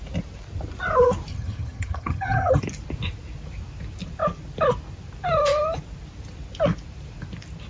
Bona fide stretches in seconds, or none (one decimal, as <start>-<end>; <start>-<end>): 0.0-1.3; 2.6-7.7